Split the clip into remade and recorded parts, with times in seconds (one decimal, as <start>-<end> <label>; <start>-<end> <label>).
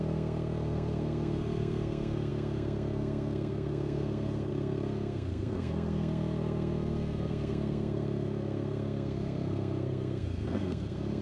0.0-11.2 remade